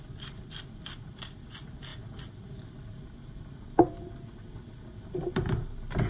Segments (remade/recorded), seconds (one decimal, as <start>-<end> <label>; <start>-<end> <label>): 0.0-6.1 recorded